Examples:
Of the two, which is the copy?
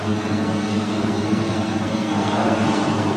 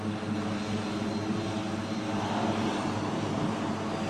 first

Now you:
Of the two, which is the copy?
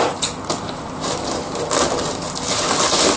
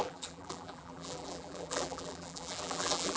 second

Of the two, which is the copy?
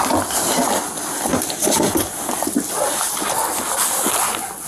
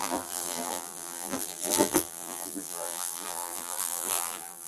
second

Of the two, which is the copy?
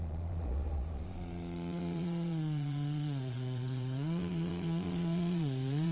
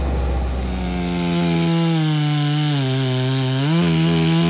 first